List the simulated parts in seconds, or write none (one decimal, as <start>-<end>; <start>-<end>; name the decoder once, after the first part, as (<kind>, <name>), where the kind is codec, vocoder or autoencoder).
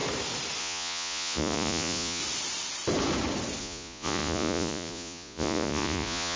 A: 0.6-2.2 (vocoder, Vocos); 3.6-6.4